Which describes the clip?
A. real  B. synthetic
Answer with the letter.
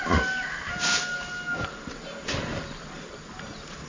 A